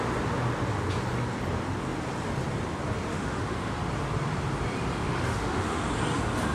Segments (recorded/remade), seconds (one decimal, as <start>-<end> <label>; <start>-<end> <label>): 0.0-3.1 recorded; 3.1-3.7 remade; 3.7-5.0 recorded; 5.0-5.9 remade; 5.9-6.5 recorded